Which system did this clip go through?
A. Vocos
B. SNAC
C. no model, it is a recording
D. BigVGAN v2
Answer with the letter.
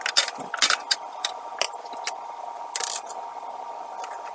C